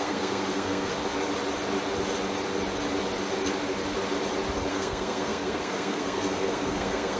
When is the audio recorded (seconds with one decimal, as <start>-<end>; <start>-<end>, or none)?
0.9-4.7